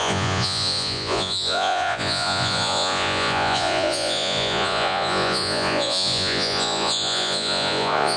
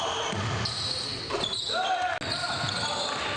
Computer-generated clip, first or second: first